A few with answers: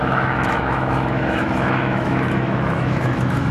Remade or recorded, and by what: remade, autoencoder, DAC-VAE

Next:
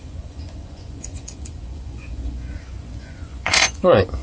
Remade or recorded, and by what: remade, vocoder, Vocos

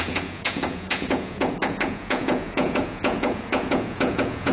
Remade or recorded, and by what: remade, vocoder, Vocos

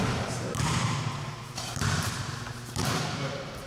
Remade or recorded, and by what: remade, vocoder, BigVGAN v2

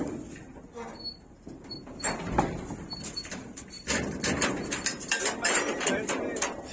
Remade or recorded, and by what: remade, vocoder, BigVGAN v2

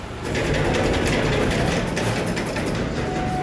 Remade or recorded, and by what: recorded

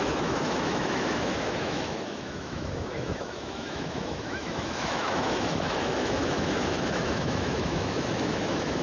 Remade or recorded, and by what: remade, autoencoder, DAC-VAE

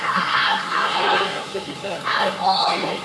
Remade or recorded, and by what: remade, codec, SNAC